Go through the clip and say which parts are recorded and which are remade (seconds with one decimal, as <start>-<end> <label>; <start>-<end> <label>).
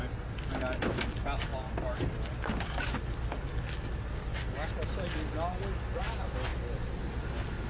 0.0-7.7 recorded